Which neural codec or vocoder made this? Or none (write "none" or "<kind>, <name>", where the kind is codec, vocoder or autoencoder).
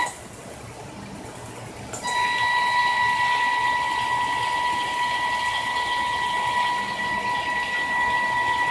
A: none